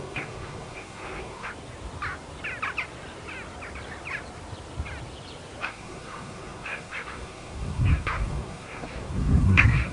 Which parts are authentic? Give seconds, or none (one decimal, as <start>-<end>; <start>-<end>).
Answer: 1.5-5.6